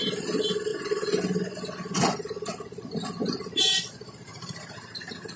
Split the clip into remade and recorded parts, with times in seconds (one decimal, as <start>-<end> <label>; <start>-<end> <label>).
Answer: 0.0-5.4 recorded